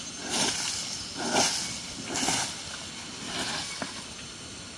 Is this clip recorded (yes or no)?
yes